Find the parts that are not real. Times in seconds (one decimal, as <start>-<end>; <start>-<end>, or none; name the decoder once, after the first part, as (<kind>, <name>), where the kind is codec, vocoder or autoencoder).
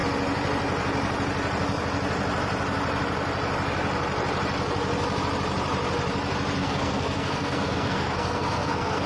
6.6-9.1 (codec, SNAC)